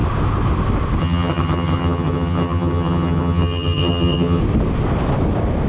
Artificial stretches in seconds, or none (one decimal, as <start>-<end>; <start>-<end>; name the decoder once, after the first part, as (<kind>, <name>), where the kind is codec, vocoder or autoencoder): 1.0-4.4 (vocoder, HiFi-GAN)